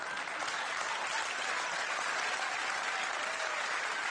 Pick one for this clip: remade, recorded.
recorded